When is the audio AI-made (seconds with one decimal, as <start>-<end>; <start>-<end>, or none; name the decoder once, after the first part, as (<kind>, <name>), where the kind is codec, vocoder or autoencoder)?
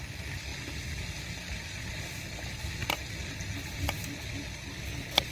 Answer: none